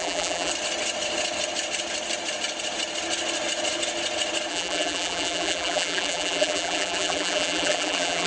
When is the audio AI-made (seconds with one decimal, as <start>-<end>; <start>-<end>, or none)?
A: 0.0-0.5; 4.5-8.3